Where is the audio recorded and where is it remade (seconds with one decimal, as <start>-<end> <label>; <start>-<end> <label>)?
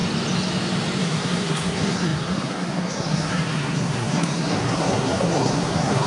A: 0.0-1.0 recorded; 1.0-6.1 remade